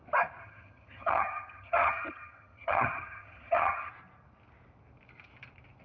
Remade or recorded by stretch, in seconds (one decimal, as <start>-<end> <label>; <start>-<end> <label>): 0.0-0.4 recorded; 0.4-3.9 remade; 3.9-5.8 recorded